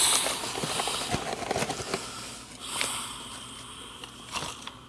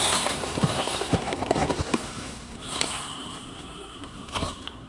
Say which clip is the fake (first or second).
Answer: second